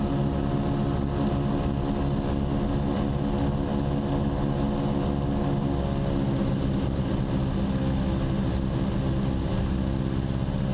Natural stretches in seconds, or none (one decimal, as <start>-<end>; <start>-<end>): 0.0-10.7